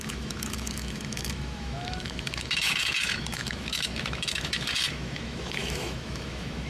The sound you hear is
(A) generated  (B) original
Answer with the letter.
A